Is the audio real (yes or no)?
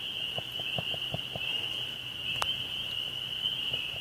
yes